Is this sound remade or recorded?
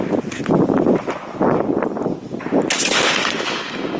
recorded